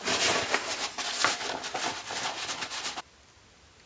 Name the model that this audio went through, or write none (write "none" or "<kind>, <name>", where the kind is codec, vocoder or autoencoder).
none